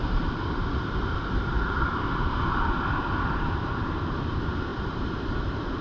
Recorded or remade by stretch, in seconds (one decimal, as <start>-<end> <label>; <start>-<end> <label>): 0.0-5.8 remade